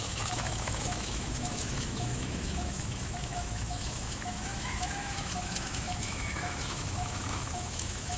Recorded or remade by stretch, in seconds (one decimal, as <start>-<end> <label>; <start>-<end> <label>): 0.0-8.2 remade

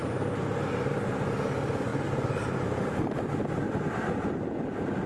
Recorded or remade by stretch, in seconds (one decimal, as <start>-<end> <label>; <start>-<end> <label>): 0.0-5.1 recorded

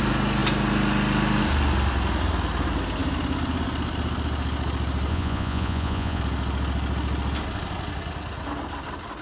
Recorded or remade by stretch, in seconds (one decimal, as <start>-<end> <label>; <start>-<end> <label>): 0.0-5.1 recorded; 5.1-6.2 remade; 6.2-9.2 recorded

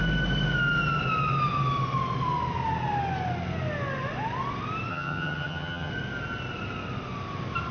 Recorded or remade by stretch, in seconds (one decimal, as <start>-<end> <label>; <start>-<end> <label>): 0.0-4.9 recorded; 4.9-5.9 remade; 5.9-7.7 recorded

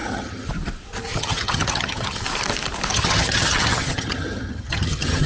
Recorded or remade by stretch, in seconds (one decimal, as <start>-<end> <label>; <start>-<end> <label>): 0.0-0.5 remade; 0.5-1.1 recorded; 1.1-2.2 remade; 2.2-2.9 recorded; 2.9-5.3 remade

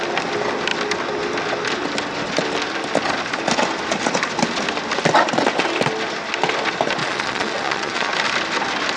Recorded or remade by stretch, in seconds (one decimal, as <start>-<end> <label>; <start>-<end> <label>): 0.0-7.0 recorded; 7.0-8.1 remade; 8.1-9.0 recorded